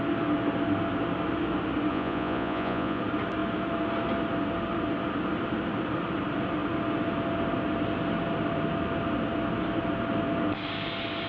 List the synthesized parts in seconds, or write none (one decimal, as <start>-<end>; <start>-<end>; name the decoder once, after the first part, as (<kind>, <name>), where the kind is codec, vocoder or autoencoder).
1.9-3.0 (vocoder, Vocos)